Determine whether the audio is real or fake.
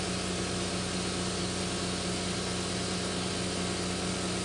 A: real